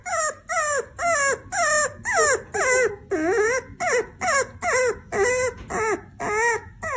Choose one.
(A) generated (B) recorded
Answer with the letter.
B